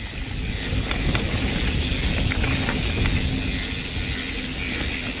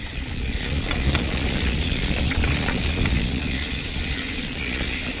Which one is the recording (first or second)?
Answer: first